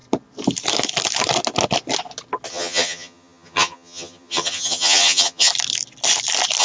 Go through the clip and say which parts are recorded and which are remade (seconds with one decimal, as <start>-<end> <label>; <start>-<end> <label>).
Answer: 0.0-2.5 recorded; 2.5-5.5 remade; 5.5-6.6 recorded

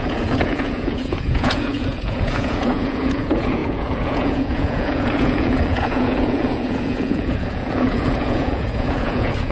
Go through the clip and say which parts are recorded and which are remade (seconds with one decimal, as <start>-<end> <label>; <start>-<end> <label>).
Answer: 0.0-9.5 remade

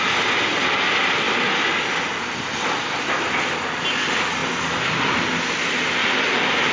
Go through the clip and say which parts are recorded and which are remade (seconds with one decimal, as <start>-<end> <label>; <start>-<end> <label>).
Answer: 0.0-6.7 recorded

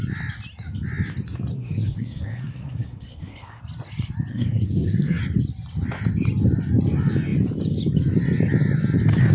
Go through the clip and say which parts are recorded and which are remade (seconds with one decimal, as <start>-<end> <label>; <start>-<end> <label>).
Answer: 0.0-1.5 recorded; 1.5-3.6 remade; 3.6-4.3 recorded; 4.3-5.2 remade; 5.2-9.3 recorded

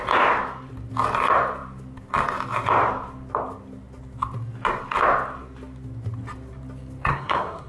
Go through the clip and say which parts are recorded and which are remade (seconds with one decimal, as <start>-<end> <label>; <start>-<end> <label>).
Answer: 0.0-7.1 recorded; 7.1-7.7 remade

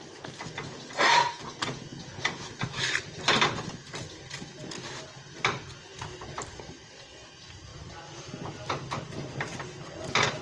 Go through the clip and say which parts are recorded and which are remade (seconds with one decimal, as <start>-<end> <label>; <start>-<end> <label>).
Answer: 0.0-1.9 recorded; 1.9-2.5 remade; 2.5-10.4 recorded